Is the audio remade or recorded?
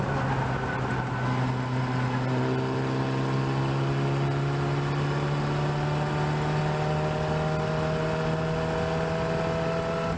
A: recorded